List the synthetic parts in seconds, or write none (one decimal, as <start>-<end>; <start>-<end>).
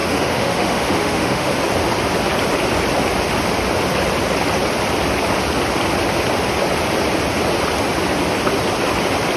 0.0-1.5